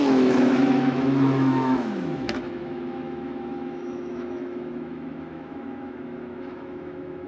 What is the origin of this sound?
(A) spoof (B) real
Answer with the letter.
A